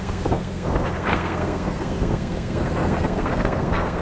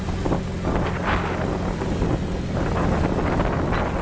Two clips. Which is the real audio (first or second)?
second